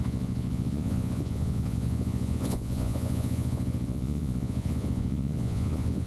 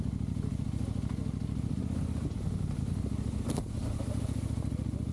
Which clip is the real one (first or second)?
second